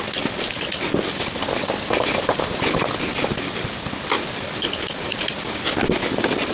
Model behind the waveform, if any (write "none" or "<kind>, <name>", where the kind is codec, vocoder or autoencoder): none